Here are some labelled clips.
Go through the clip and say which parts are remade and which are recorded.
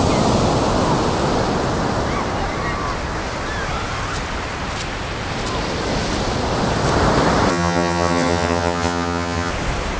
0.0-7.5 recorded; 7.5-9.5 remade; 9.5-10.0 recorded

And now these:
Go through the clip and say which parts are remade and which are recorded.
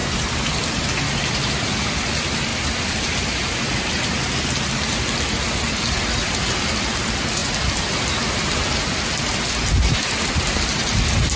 0.0-11.4 recorded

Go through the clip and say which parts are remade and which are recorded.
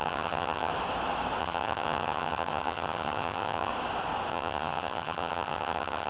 0.0-0.7 remade; 0.7-1.4 recorded; 1.4-3.7 remade; 3.7-4.3 recorded; 4.3-6.1 remade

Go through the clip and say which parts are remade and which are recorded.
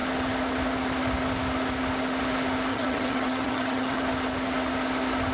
0.0-2.7 recorded; 2.7-4.0 remade; 4.0-5.3 recorded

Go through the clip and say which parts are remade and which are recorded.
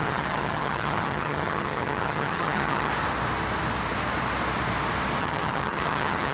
0.0-2.9 remade; 2.9-5.2 recorded; 5.2-6.3 remade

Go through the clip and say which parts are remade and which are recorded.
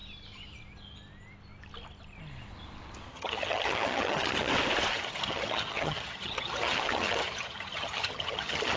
0.0-3.1 recorded; 3.1-4.5 remade; 4.5-4.9 recorded; 4.9-8.8 remade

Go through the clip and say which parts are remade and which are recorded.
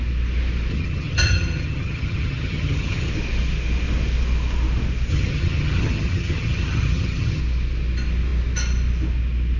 0.0-0.7 recorded; 0.7-3.1 remade; 3.1-5.1 recorded; 5.1-7.4 remade; 7.4-9.6 recorded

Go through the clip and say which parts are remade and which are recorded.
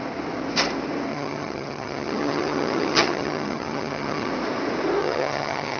0.0-1.1 recorded; 1.1-4.3 remade; 4.3-5.0 recorded; 5.0-5.8 remade